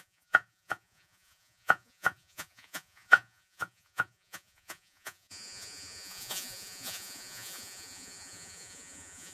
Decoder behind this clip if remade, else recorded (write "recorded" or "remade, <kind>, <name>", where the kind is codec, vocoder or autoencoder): remade, vocoder, Vocos